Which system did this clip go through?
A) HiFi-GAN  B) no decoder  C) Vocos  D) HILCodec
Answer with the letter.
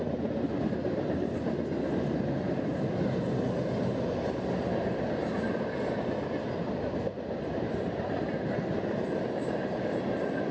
B